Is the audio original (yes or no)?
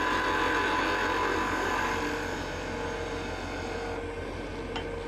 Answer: yes